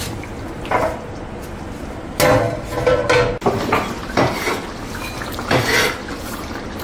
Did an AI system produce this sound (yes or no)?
no